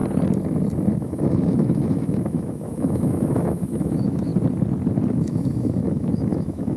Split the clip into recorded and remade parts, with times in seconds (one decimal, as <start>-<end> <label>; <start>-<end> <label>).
0.0-1.0 recorded; 1.0-4.3 remade; 4.3-5.1 recorded; 5.1-6.8 remade